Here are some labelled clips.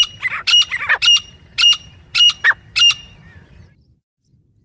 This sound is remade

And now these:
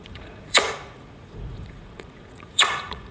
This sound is remade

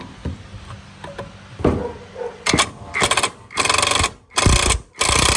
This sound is recorded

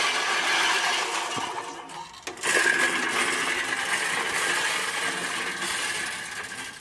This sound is recorded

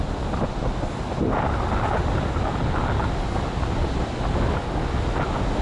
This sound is recorded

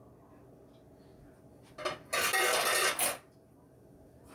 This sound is recorded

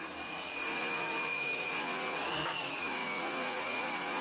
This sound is remade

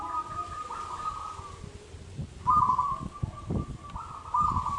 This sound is recorded